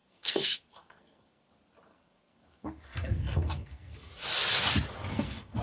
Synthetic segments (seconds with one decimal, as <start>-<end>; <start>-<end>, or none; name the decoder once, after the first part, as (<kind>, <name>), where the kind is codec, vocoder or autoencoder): 0.0-1.4 (codec, SNAC); 1.9-4.1; 5.1-5.6